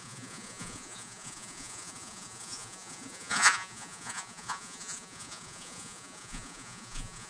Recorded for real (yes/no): no